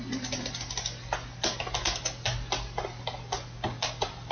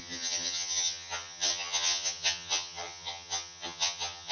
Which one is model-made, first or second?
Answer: second